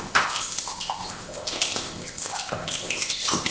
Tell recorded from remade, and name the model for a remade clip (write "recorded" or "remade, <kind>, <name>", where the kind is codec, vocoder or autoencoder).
remade, codec, ZipCodec